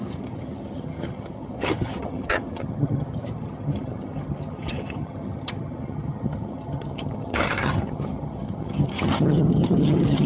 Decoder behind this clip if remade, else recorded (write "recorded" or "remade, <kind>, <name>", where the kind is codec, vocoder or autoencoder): remade, vocoder, HiFi-GAN